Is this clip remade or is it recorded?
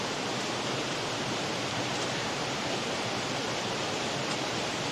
recorded